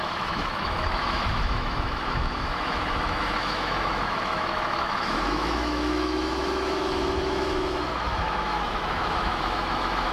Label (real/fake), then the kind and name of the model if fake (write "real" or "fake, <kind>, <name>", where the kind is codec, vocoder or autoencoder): fake, autoencoder, DAC-VAE